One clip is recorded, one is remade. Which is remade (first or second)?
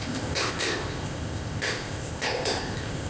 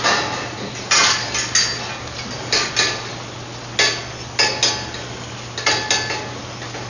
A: first